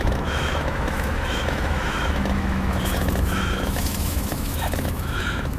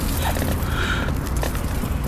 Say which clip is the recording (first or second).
second